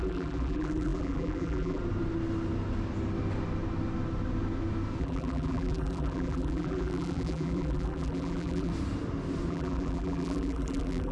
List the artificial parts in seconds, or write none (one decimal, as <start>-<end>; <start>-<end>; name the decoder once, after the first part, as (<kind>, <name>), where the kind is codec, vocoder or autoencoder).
0.0-1.8 (vocoder, BigVGAN v2); 5.0-8.7; 9.5-11.1